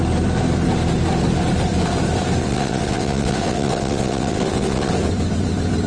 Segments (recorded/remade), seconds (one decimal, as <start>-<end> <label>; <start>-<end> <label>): 0.0-2.4 recorded; 2.4-4.9 remade; 4.9-5.9 recorded